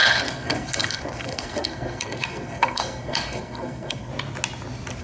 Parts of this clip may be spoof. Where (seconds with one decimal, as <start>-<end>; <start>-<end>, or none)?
0.0-4.1